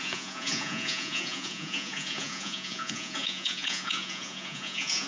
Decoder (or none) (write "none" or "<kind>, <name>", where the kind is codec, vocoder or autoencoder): vocoder, Vocos